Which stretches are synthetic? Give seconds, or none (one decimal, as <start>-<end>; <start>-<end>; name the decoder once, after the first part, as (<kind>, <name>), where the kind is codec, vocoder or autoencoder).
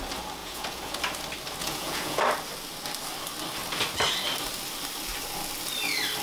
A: 0.4-1.0 (vocoder, Vocos); 1.6-2.2